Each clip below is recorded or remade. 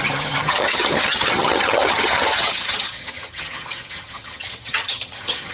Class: remade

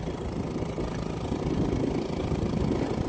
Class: recorded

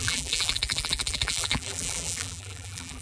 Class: remade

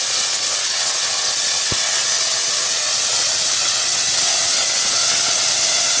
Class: remade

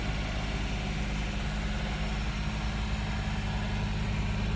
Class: recorded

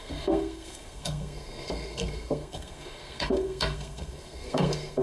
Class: remade